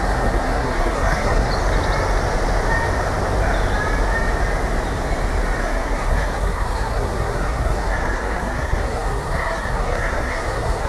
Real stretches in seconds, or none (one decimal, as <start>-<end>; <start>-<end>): 1.5-5.6